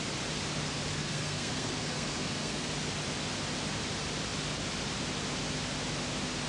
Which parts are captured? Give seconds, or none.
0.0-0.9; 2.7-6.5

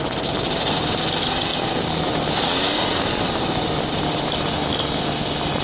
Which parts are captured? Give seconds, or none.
0.0-5.6

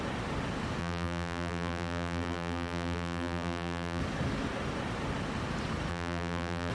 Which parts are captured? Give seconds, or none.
0.0-0.8; 4.0-5.9

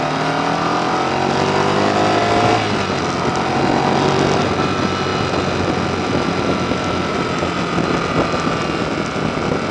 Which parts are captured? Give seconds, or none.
0.0-9.7

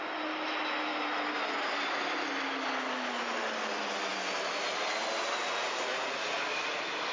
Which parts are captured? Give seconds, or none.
0.0-7.1

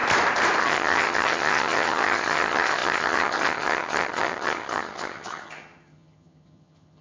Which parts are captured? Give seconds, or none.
0.0-0.6